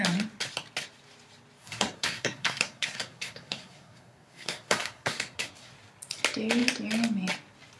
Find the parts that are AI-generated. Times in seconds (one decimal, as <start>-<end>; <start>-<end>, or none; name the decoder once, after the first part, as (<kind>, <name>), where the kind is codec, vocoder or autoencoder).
1.6-5.7 (codec, SNAC)